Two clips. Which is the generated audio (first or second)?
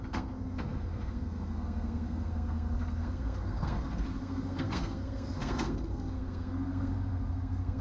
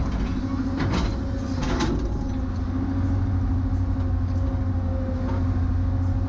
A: first